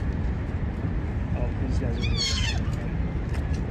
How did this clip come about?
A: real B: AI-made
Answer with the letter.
A